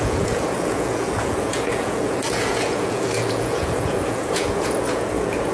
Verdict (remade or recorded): remade